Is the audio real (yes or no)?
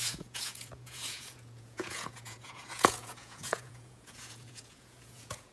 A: no